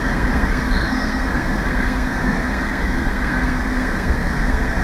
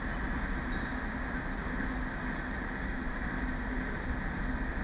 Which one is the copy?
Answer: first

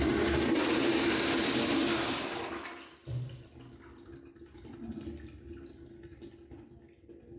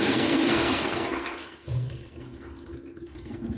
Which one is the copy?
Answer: second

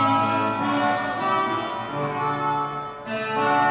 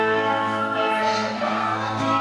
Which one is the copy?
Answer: second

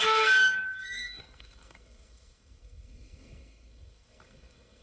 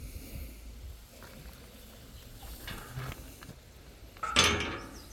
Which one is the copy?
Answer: first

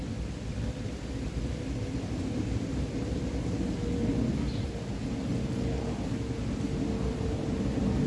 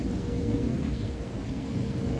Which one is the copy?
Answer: second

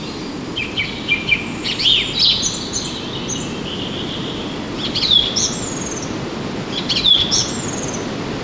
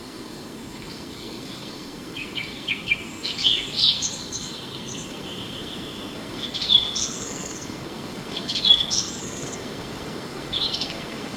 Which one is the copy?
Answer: second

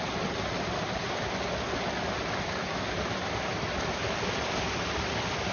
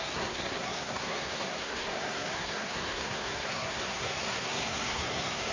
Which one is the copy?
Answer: second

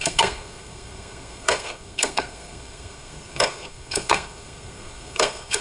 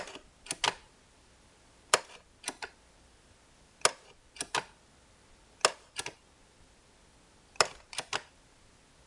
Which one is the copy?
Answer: first